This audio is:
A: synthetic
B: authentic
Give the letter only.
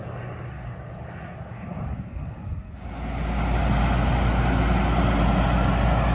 B